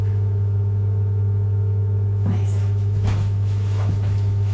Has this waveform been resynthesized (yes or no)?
yes